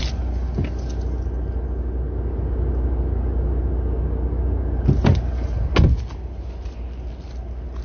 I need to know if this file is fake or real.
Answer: real